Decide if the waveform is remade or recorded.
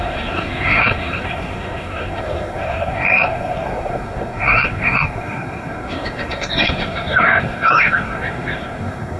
remade